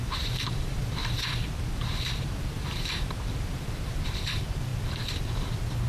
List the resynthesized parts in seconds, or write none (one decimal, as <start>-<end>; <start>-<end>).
0.0-1.0; 2.4-4.7